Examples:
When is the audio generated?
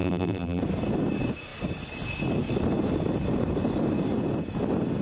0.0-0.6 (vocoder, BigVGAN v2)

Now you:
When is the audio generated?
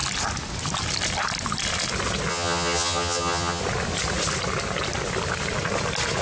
2.3-3.6 (vocoder, HiFi-GAN)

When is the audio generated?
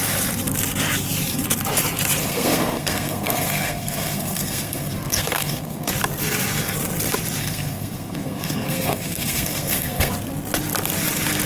2.2-5.9 (codec, SNAC); 7.4-10.1